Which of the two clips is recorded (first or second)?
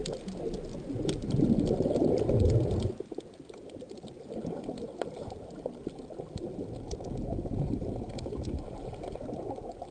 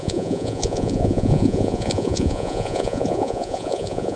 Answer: first